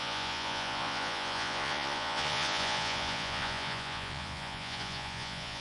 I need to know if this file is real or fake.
fake